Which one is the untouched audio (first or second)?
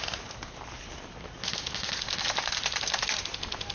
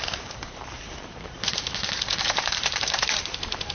first